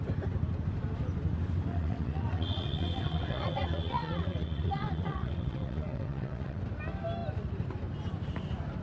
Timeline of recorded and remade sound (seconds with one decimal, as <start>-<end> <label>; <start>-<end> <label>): 0.0-1.7 recorded; 1.7-6.6 remade; 6.6-8.8 recorded